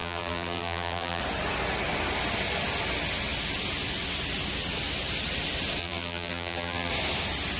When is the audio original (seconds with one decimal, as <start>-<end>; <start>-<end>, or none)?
1.2-5.8; 6.9-7.6